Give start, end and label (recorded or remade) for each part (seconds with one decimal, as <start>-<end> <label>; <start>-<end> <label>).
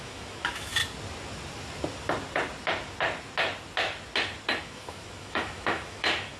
0.0-0.8 remade; 0.8-4.6 recorded; 4.6-6.4 remade